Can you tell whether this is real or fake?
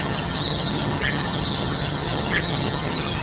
fake